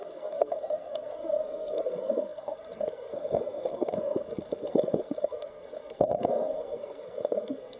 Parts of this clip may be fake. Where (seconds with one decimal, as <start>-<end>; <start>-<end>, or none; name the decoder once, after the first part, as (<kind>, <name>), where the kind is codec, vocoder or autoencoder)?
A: 0.0-7.8 (codec, SNAC)